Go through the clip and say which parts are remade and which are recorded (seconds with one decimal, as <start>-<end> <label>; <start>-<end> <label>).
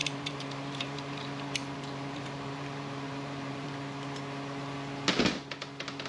0.0-3.7 remade; 3.7-6.1 recorded